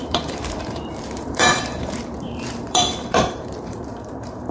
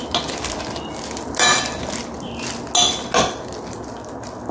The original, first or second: second